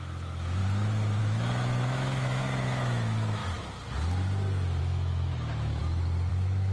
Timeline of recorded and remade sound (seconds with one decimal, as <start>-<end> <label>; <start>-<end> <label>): 0.0-0.6 remade; 0.6-1.2 recorded; 1.2-3.4 remade; 3.4-4.8 recorded; 4.8-5.8 remade; 5.8-6.3 recorded; 6.3-6.7 remade